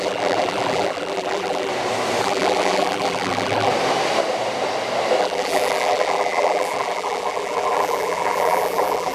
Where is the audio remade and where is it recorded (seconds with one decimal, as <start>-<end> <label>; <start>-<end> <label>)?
0.0-1.7 remade; 1.7-2.2 recorded; 2.2-3.7 remade; 3.7-5.2 recorded; 5.2-9.1 remade